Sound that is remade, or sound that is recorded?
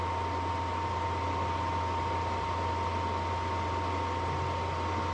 recorded